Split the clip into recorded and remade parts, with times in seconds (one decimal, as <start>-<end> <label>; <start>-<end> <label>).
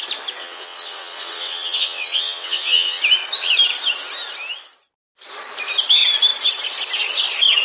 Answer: 0.0-0.4 recorded; 0.4-3.0 remade; 3.0-7.6 recorded